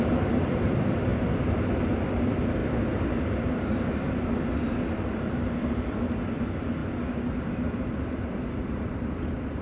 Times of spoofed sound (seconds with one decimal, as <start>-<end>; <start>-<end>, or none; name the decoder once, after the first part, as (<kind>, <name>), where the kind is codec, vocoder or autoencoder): 0.0-1.1 (vocoder, BigVGAN v2); 2.0-2.6; 4.5-6.8; 7.4-9.6